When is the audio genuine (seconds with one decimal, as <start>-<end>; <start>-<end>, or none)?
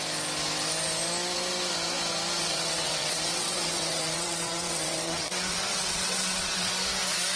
0.0-2.4; 6.7-7.4